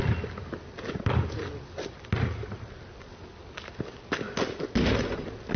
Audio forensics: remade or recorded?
recorded